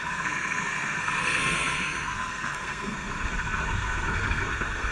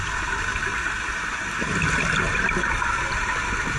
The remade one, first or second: first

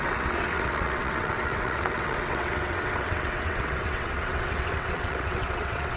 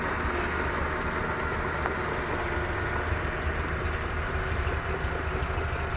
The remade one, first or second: first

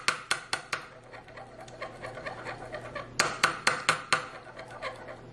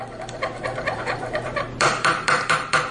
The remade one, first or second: second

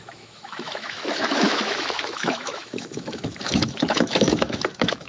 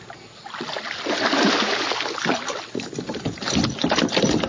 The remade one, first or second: first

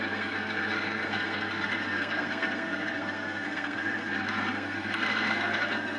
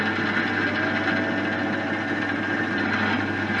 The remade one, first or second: first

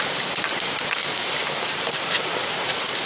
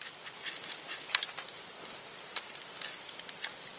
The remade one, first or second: first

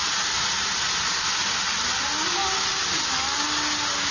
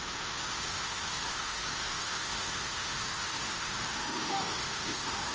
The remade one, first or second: second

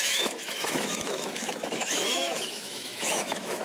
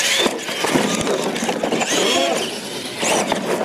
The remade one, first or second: first